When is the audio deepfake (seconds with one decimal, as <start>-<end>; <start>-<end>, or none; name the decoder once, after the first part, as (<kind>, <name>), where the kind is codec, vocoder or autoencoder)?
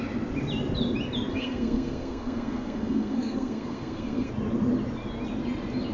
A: 1.3-4.3 (codec, SNAC)